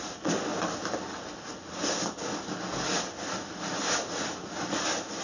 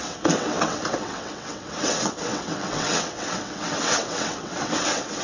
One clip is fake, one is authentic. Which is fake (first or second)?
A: second